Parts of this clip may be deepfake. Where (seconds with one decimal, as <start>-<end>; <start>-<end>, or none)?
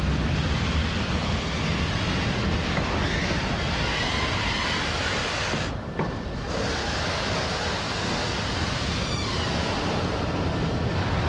5.2-5.7; 6.8-7.5